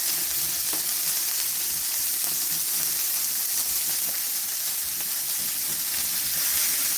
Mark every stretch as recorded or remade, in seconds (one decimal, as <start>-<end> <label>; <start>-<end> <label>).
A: 0.0-7.0 recorded